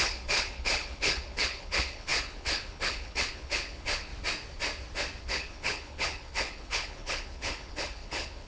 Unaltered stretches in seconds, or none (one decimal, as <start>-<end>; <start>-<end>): 4.1-5.2

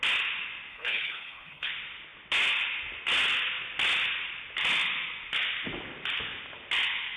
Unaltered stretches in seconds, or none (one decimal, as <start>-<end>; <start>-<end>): 0.0-0.7; 1.7-7.2

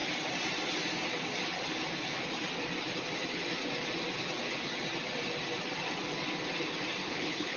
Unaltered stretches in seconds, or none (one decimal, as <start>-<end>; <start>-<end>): 0.0-7.0